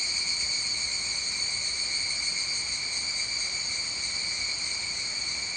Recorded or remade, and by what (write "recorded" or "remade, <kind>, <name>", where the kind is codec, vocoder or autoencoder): recorded